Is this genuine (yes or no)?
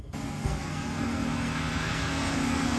no